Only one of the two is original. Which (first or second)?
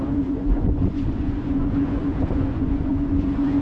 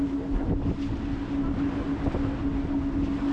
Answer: second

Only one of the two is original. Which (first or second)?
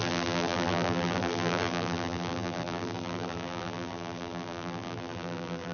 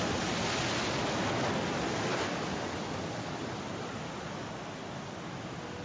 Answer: second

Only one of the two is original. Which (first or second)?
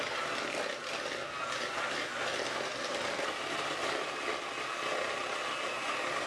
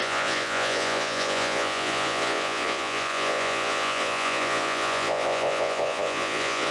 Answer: first